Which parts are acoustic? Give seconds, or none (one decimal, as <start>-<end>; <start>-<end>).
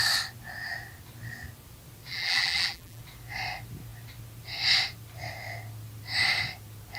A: 0.0-2.1; 3.0-7.0